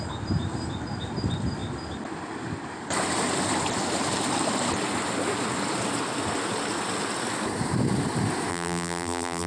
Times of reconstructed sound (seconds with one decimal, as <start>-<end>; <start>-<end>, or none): 8.5-9.5